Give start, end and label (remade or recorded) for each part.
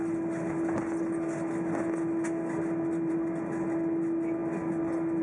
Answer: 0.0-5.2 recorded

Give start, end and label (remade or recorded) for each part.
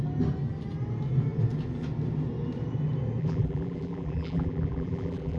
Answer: 0.0-3.2 recorded; 3.2-5.4 remade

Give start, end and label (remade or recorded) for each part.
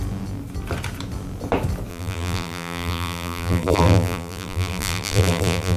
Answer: 0.0-1.9 recorded; 1.9-5.8 remade